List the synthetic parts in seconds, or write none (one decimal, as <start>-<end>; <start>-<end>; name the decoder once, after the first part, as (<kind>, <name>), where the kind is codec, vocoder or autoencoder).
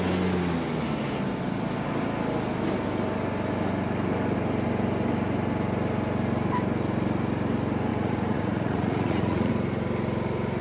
7.9-9.5 (vocoder, Vocos)